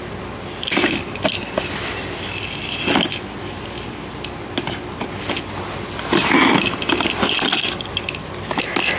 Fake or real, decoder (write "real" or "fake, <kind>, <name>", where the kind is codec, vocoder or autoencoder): real